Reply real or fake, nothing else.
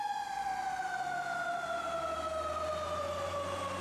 real